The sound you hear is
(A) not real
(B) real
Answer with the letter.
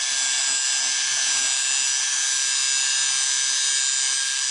B